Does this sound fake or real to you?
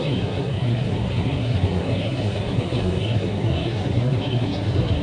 fake